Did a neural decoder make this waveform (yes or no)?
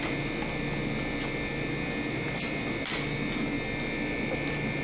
no